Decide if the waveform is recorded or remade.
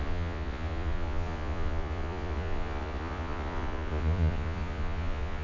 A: remade